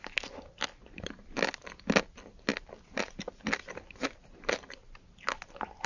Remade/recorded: recorded